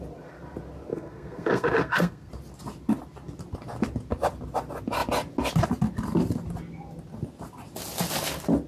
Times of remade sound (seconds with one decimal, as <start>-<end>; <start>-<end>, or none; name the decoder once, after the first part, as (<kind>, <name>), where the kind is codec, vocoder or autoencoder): 0.9-2.3 (codec, SNAC)